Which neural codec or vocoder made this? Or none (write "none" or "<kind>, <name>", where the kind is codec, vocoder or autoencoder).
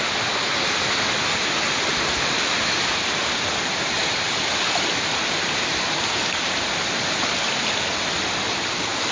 none